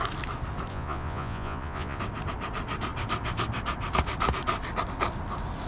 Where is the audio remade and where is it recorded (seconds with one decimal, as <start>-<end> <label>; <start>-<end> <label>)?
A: 0.0-0.7 recorded; 0.7-2.0 remade; 2.0-5.7 recorded